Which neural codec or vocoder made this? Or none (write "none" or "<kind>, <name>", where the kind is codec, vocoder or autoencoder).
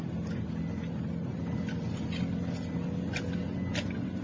none